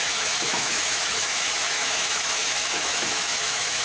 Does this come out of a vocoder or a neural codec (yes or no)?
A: yes